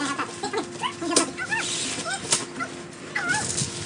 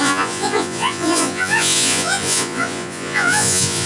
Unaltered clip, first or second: first